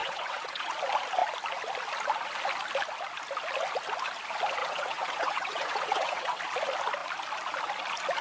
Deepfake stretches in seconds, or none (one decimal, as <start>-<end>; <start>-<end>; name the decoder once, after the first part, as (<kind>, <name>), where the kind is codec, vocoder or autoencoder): 0.0-0.7 (vocoder, WaveNeXt); 4.6-6.4